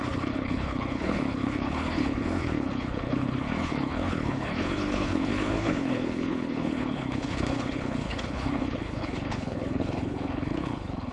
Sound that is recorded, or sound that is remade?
remade